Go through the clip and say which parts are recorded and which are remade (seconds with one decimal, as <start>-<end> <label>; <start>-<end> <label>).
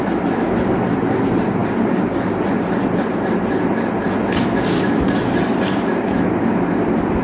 0.0-7.2 recorded